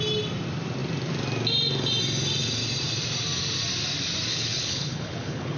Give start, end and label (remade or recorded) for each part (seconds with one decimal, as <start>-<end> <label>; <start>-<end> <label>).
0.0-4.3 recorded; 4.3-5.6 remade